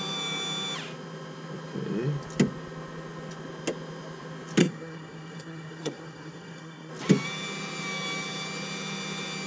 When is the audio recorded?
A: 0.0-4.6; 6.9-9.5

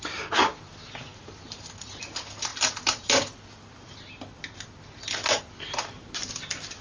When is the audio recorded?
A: 0.0-6.8